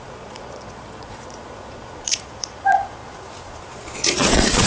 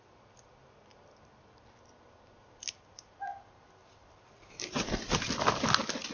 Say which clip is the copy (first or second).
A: first